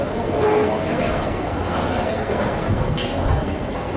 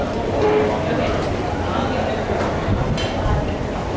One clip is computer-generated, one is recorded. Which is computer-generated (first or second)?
first